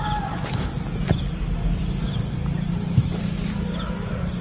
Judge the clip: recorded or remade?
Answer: recorded